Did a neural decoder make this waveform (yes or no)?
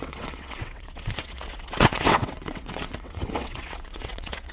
yes